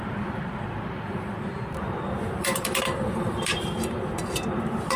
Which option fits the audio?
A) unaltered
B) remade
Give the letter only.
B